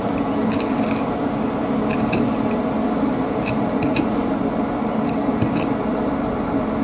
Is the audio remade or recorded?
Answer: recorded